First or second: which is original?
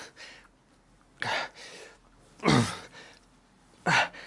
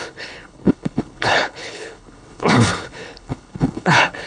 first